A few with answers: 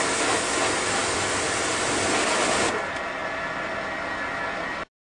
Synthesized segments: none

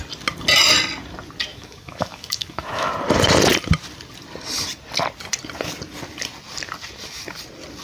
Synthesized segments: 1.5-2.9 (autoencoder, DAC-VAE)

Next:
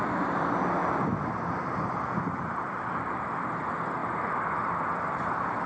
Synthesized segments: 0.0-0.8 (vocoder, BigVGAN v2); 3.6-4.0; 4.5-5.7